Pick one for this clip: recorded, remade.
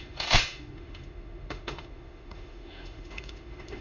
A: remade